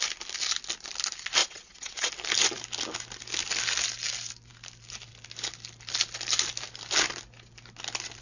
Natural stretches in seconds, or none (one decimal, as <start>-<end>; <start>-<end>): 0.0-1.4; 2.1-8.2